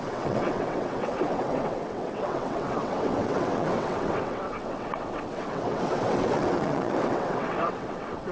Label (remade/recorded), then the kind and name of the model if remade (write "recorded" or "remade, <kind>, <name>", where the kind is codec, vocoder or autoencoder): remade, vocoder, WaveNeXt